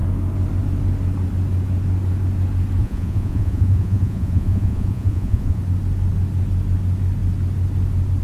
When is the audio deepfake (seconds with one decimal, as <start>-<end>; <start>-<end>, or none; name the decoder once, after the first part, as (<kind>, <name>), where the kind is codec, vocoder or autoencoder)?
2.8-5.6 (vocoder, Vocos)